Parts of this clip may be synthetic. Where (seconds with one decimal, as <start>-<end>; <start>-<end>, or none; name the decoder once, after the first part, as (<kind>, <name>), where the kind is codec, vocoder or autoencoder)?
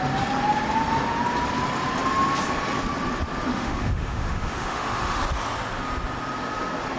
3.5-5.2 (autoencoder, DAC-VAE)